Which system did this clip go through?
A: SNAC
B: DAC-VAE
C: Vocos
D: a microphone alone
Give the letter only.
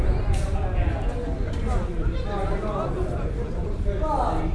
D